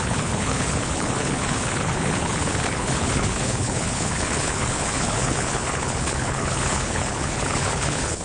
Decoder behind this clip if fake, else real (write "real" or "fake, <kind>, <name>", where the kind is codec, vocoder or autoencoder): fake, codec, HILCodec